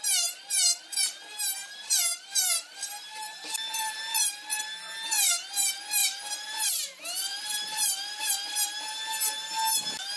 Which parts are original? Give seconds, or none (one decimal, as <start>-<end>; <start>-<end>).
0.0-1.6; 4.2-6.0; 6.7-7.3; 8.2-10.2